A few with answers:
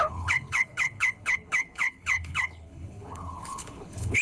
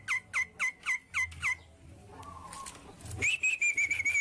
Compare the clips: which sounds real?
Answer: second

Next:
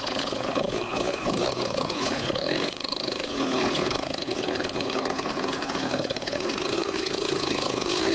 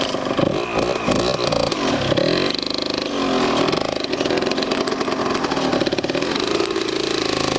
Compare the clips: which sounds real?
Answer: second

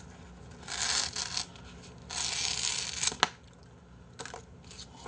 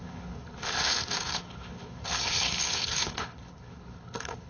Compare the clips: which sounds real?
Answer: first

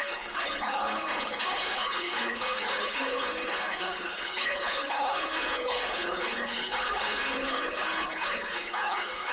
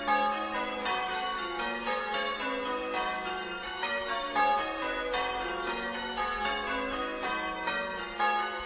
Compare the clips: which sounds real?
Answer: second